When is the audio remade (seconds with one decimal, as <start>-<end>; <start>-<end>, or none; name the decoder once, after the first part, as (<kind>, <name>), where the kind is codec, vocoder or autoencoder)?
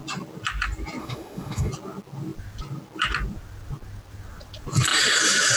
1.0-1.7 (autoencoder, DAC-VAE)